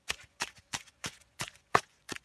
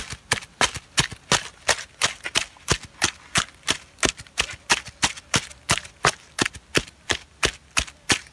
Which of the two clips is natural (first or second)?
second